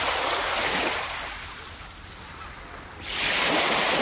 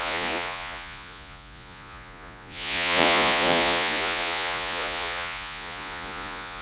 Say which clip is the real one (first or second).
first